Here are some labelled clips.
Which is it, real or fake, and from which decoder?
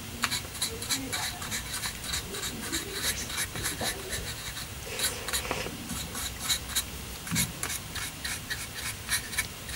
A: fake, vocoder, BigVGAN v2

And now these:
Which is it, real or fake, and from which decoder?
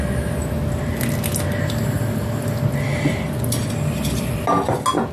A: real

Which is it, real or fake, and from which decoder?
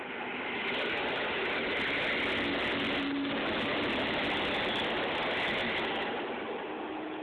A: real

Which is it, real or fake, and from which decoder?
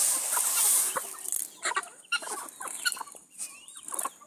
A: real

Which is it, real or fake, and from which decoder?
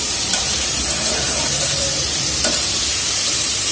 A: fake, vocoder, BigVGAN v2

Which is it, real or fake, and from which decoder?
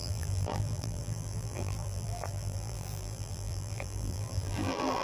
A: fake, vocoder, BigVGAN v2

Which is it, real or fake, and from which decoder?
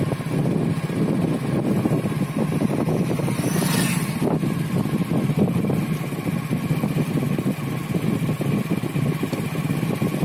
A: real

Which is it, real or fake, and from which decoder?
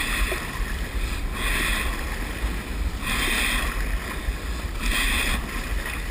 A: real